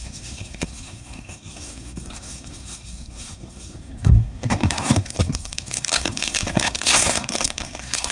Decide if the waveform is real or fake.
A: fake